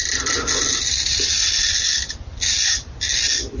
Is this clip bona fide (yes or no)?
yes